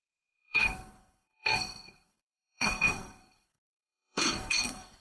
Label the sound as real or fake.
fake